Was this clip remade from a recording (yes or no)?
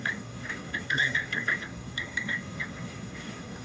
yes